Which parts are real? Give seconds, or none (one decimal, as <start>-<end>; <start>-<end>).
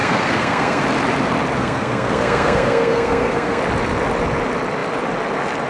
0.8-1.6; 3.6-5.7